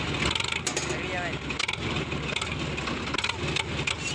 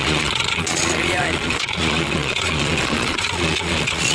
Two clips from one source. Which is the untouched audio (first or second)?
first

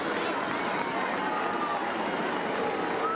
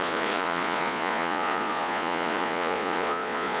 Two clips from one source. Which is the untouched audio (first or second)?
first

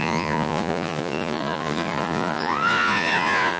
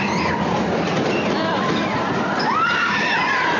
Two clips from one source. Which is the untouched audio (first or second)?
second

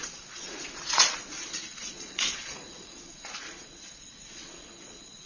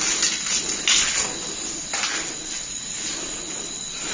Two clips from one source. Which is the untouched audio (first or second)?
second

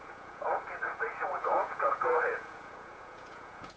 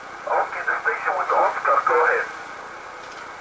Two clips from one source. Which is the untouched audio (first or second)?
second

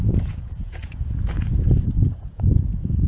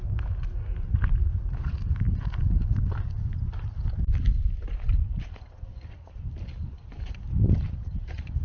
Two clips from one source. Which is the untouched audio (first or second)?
second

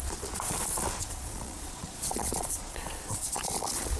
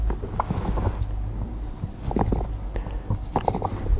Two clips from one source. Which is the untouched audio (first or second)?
second